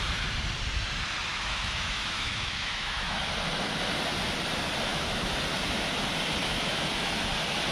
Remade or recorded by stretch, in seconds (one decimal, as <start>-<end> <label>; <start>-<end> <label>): 0.0-1.3 recorded; 1.3-3.2 remade; 3.2-4.9 recorded; 4.9-5.4 remade; 5.4-6.4 recorded; 6.4-6.9 remade; 6.9-7.7 recorded